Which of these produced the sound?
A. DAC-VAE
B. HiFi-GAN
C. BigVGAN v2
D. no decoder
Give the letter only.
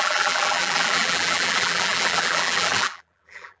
C